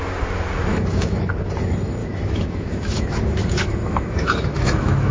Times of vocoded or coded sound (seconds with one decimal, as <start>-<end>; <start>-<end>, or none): 0.7-1.3; 2.0-5.1

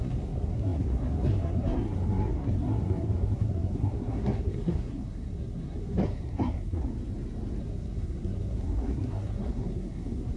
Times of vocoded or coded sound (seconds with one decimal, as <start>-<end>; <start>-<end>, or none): 0.0-6.9; 7.6-10.4

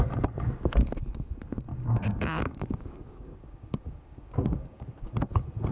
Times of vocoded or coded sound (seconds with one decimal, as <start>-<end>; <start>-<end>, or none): 1.7-5.1